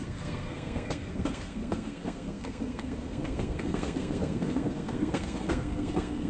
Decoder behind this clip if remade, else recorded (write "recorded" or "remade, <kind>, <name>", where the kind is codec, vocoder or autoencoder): remade, codec, SNAC